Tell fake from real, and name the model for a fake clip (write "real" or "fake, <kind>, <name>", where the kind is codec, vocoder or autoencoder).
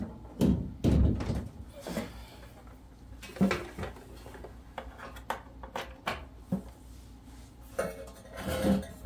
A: real